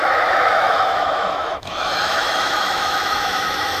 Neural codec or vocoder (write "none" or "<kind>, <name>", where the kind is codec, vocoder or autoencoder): autoencoder, DAC-VAE